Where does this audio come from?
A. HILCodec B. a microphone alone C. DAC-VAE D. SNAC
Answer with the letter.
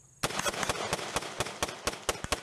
B